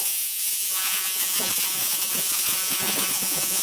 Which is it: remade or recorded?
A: remade